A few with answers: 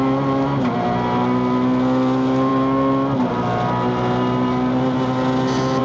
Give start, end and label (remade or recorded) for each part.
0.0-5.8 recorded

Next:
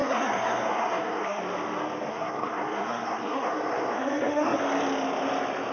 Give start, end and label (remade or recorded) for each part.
0.0-1.4 remade; 1.4-2.1 recorded; 2.1-4.6 remade; 4.6-5.7 recorded